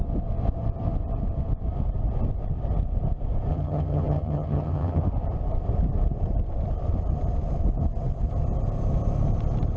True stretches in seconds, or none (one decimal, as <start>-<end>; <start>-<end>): 0.0-3.5; 5.0-9.8